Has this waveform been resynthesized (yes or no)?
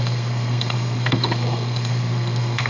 yes